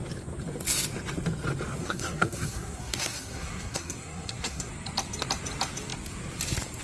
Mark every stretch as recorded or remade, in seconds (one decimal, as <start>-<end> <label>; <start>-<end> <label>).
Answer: 0.0-1.8 recorded; 1.8-4.7 remade; 4.7-6.8 recorded